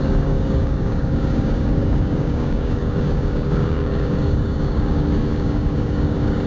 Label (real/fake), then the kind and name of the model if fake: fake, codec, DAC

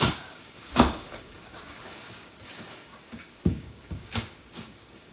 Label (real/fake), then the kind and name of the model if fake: fake, codec, DAC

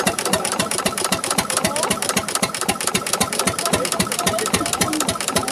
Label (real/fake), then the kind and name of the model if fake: fake, vocoder, BigVGAN v2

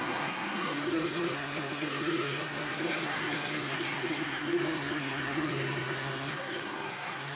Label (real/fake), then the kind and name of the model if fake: fake, codec, SNAC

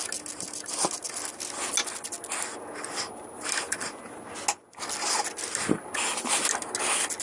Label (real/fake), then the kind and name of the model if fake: real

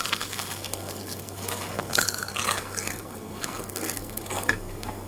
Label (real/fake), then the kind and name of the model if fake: fake, codec, SNAC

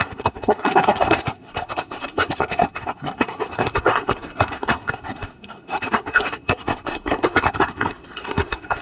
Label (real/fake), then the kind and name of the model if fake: fake, codec, SNAC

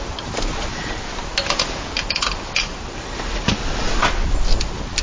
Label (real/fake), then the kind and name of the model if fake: real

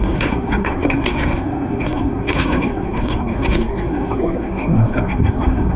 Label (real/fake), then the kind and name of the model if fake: fake, codec, SNAC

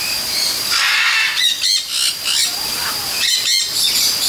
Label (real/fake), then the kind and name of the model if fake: real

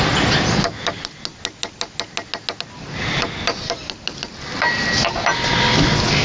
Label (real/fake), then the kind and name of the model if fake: real